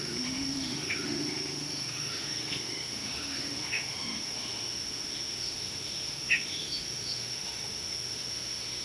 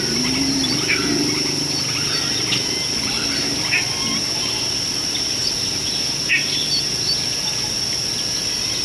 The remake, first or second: first